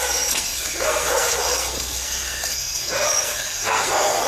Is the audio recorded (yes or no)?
no